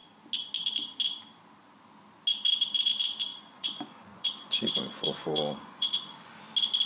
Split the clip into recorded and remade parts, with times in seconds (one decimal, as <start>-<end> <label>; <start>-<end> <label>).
0.0-3.3 recorded; 3.3-6.3 remade; 6.3-6.9 recorded